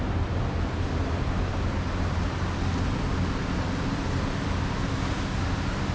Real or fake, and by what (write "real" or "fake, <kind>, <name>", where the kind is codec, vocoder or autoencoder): real